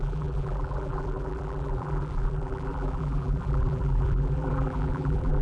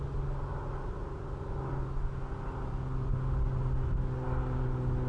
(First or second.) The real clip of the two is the second